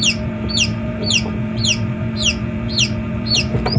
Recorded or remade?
remade